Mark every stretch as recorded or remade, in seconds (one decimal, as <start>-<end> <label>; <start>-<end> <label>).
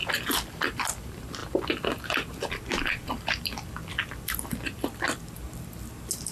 0.0-6.3 recorded